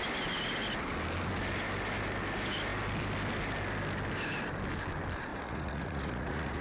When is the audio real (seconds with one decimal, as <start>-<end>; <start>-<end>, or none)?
0.0-5.3